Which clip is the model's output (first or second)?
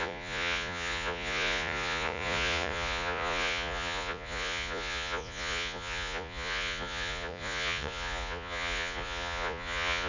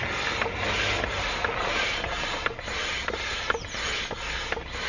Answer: first